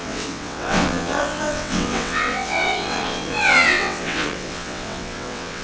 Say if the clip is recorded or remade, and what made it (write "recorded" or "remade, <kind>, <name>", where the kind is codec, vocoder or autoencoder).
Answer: remade, vocoder, WaveNeXt